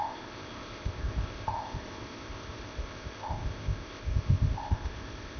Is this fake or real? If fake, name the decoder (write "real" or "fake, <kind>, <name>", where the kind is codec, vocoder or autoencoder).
fake, codec, ZipCodec